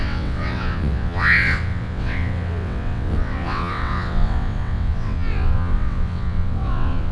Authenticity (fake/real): fake